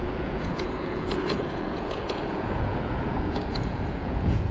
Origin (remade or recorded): remade